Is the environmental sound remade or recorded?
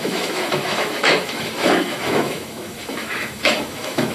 remade